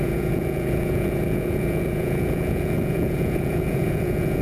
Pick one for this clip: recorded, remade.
remade